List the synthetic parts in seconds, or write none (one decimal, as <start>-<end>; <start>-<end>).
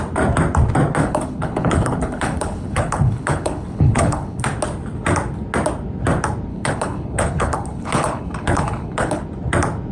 1.0-4.4; 6.5-9.2